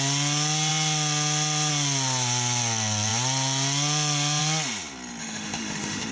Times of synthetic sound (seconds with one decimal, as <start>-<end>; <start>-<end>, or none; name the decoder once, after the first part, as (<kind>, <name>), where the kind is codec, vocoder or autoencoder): 5.2-6.1 (autoencoder, DAC-VAE)